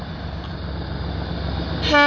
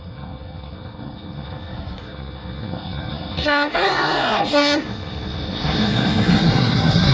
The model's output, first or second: second